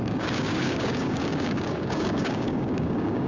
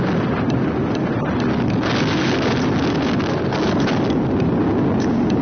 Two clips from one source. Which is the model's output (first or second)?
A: first